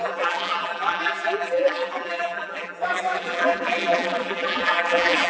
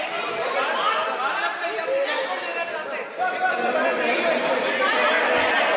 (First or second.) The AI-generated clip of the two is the first